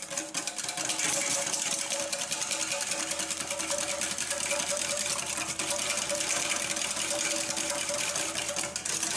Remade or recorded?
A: recorded